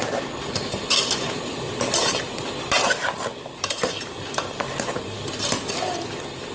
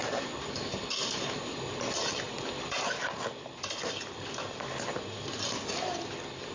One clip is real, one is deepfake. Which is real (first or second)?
second